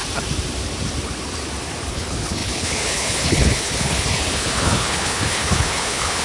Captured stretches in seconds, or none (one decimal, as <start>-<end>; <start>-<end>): 0.0-1.9